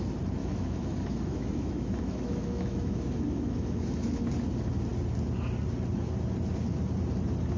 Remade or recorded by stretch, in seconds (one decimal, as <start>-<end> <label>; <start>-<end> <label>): 0.0-0.4 recorded; 0.4-4.2 remade; 4.2-7.6 recorded

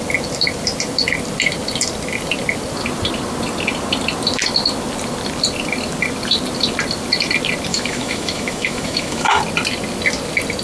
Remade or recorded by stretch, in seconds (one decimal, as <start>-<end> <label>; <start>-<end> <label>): 0.0-7.7 recorded; 7.7-9.4 remade; 9.4-10.6 recorded

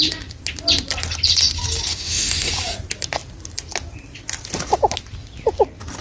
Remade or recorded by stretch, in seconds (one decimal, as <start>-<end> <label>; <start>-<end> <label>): 0.0-1.9 recorded; 1.9-2.5 remade; 2.5-6.0 recorded